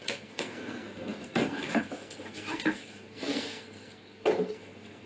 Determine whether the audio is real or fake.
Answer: fake